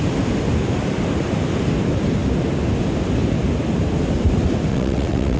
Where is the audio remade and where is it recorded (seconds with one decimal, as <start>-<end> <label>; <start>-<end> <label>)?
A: 0.0-4.7 recorded; 4.7-5.4 remade

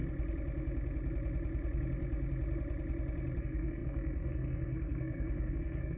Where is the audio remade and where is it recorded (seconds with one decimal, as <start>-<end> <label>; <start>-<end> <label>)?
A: 0.0-3.4 recorded; 3.4-6.0 remade